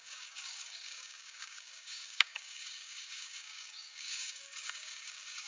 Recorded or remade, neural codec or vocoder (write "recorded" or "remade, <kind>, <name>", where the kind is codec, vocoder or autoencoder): remade, codec, DAC